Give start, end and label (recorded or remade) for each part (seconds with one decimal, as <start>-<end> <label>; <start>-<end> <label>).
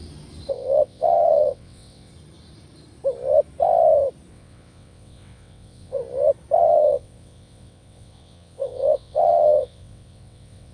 0.0-0.5 recorded; 0.5-2.1 remade; 2.1-4.3 recorded; 4.3-6.0 remade; 6.0-6.6 recorded; 6.6-10.7 remade